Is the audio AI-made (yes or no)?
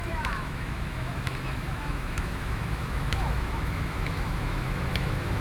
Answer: yes